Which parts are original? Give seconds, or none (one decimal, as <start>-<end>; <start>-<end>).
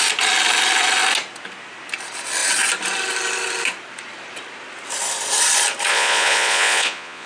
0.0-5.9